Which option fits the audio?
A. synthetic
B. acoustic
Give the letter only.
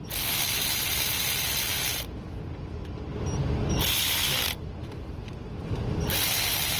B